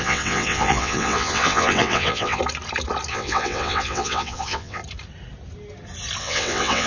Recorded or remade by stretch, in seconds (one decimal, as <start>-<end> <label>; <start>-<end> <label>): 0.0-2.4 remade; 2.4-3.1 recorded; 3.1-4.8 remade; 4.8-6.2 recorded; 6.2-6.9 remade